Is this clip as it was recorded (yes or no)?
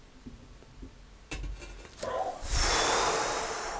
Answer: yes